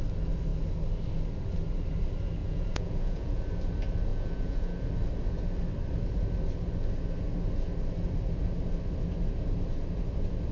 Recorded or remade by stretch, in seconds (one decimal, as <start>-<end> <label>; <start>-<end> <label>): 0.0-2.4 recorded; 2.4-3.4 remade; 3.4-4.1 recorded; 4.1-4.9 remade; 4.9-10.5 recorded